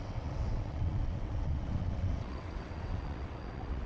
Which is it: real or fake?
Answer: fake